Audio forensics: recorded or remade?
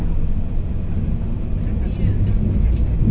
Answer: recorded